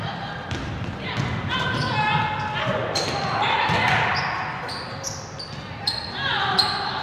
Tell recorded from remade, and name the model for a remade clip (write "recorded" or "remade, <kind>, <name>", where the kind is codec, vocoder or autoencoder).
recorded